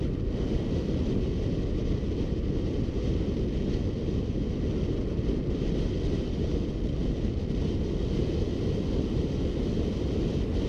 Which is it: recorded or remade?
recorded